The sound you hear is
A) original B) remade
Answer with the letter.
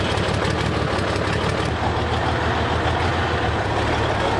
A